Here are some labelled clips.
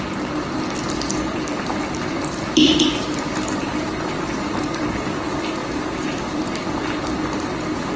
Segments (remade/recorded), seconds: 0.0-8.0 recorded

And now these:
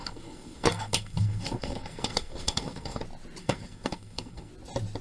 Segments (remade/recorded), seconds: 0.0-3.0 remade; 3.0-3.4 recorded; 3.4-4.5 remade; 4.5-5.0 recorded